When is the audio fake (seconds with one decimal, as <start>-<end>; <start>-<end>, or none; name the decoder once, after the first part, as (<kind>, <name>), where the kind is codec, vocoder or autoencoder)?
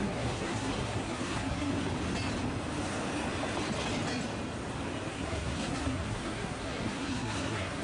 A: 0.0-1.7 (codec, SNAC); 5.1-7.8